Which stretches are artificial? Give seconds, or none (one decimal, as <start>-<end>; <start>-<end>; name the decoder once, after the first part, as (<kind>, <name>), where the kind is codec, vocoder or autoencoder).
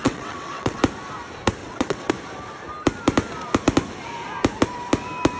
0.0-0.8 (vocoder, WaveNeXt); 1.6-2.1